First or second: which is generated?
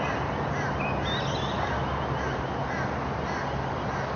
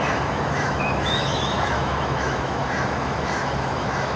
second